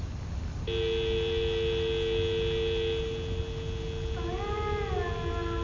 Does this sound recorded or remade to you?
recorded